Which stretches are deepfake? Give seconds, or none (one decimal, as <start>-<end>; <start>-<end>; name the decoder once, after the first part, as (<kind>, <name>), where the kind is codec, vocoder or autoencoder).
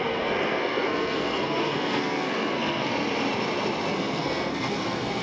0.0-2.9 (codec, SNAC); 3.9-5.2